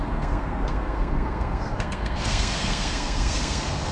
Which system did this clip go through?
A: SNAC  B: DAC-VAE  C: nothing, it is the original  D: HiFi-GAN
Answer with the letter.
A